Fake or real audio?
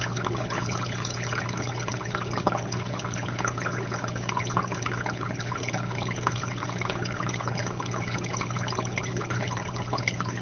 fake